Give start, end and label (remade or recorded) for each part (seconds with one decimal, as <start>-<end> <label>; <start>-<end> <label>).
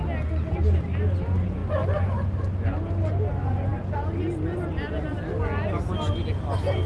0.0-6.9 recorded